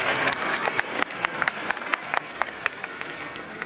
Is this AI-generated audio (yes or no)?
yes